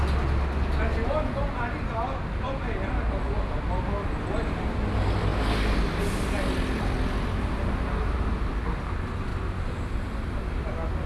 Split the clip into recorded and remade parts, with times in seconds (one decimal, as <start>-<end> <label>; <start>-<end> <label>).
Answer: 0.0-11.1 recorded